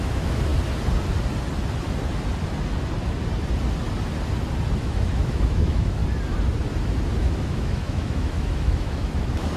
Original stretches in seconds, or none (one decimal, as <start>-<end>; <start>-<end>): 0.5-4.8; 6.0-7.2